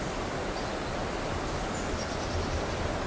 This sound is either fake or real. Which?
real